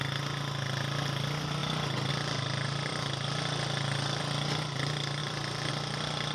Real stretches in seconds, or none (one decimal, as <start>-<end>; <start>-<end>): 0.0-5.2; 5.7-6.3